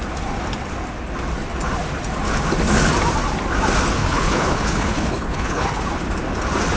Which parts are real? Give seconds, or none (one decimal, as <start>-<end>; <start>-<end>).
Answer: 0.0-4.0; 5.8-6.8